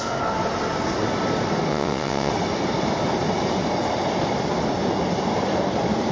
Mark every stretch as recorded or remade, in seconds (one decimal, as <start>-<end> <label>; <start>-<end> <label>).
0.0-1.7 recorded; 1.7-2.3 remade; 2.3-6.1 recorded